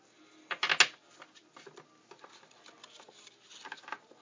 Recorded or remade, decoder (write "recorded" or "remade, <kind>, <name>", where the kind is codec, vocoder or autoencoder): recorded